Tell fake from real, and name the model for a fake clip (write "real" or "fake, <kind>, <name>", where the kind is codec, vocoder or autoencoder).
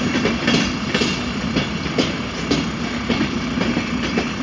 real